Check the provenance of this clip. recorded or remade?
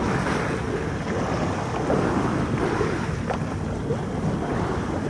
recorded